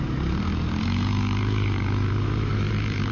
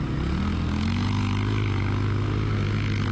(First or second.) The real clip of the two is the second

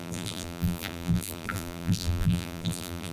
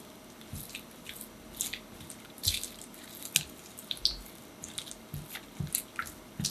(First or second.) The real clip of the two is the second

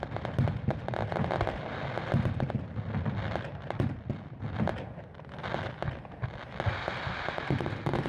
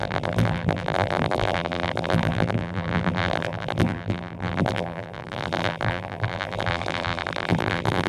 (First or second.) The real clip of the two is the first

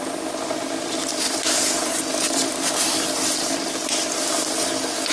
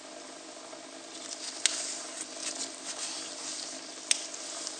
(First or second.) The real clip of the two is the second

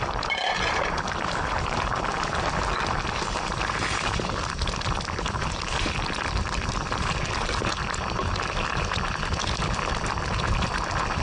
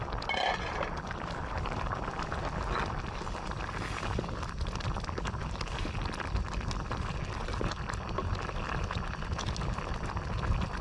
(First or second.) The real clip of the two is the second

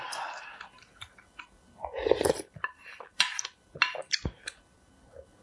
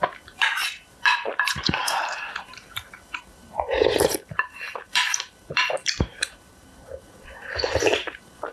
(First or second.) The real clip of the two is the first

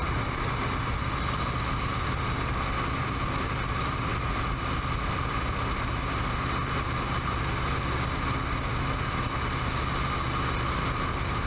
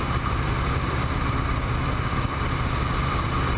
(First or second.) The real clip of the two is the first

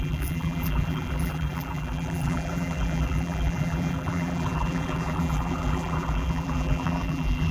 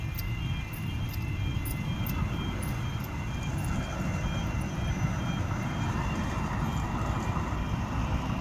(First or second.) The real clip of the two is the second